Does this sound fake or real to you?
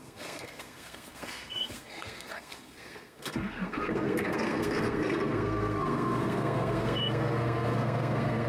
fake